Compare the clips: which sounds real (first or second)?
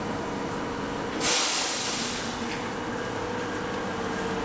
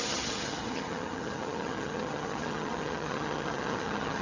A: first